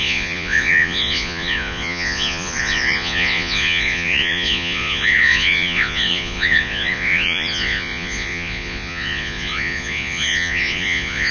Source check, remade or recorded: remade